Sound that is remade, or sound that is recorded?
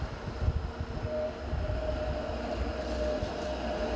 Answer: recorded